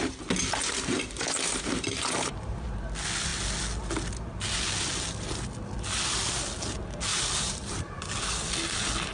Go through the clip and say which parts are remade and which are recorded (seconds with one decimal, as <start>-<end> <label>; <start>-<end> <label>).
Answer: 0.0-0.6 recorded; 0.6-2.7 remade; 2.7-7.1 recorded; 7.1-8.0 remade; 8.0-9.1 recorded